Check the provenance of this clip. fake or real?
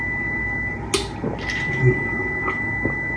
real